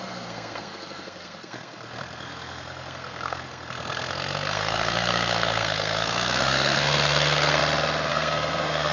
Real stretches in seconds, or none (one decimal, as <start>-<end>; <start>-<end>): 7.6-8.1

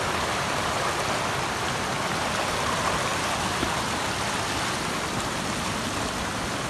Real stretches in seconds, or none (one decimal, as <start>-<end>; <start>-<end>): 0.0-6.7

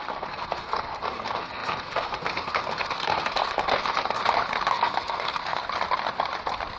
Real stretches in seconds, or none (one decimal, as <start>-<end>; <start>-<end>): 4.2-4.7; 5.6-6.8

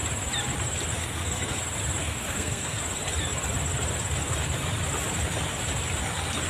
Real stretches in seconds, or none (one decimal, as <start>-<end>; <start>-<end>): 0.0-1.0; 1.6-2.0; 2.8-6.5

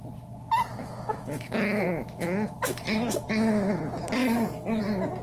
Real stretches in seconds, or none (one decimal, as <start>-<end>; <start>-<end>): 0.0-0.7; 3.8-4.2; 4.8-5.2

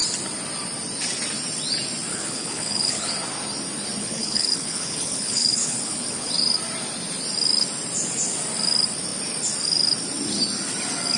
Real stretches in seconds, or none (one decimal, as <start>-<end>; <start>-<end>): 0.0-2.1; 3.1-4.0; 6.3-11.2

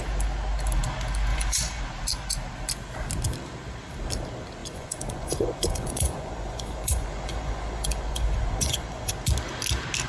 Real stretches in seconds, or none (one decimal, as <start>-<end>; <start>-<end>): 0.0-1.3; 1.8-4.6; 9.1-10.1

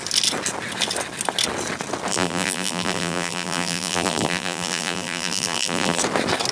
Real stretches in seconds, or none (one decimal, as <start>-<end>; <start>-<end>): 0.0-2.1; 6.0-6.5